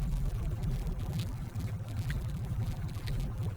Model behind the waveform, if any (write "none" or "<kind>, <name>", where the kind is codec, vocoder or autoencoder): vocoder, BigVGAN v2